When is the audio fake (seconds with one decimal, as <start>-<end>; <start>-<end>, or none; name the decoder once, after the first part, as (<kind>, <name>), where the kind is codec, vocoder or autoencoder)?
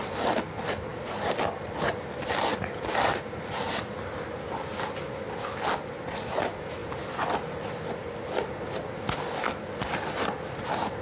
none